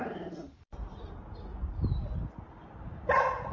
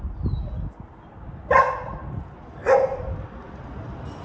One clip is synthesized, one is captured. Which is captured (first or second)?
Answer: second